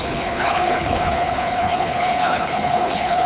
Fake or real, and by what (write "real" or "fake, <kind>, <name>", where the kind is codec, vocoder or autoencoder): fake, codec, HILCodec